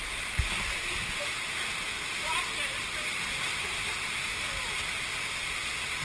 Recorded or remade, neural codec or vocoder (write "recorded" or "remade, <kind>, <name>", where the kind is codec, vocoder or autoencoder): recorded